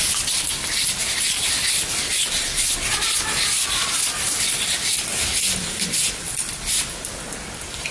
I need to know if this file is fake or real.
real